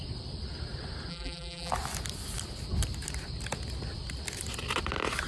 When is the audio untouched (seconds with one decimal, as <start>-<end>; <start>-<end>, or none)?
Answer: 0.0-1.1; 1.7-5.3